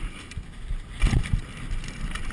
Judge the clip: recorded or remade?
recorded